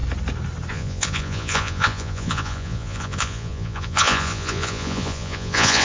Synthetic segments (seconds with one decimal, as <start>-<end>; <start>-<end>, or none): 0.7-5.8

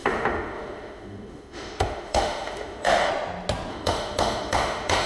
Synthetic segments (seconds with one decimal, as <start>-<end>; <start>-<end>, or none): 0.0-3.1; 3.7-5.1